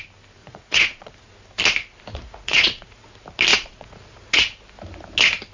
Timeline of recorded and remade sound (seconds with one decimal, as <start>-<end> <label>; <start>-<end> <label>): 0.0-0.4 recorded; 0.4-1.3 remade; 1.3-2.1 recorded; 2.1-3.1 remade; 3.1-3.5 recorded; 3.5-4.4 remade; 4.4-5.5 recorded